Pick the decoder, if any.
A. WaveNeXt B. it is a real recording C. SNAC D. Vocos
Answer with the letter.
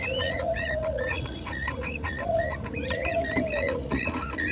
D